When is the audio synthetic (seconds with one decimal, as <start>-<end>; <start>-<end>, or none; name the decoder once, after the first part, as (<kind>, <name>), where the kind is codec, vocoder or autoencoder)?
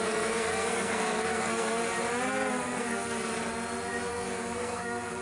0.0-1.8 (codec, SNAC); 2.5-3.3; 4.1-5.2